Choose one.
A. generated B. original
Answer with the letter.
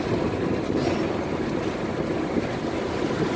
B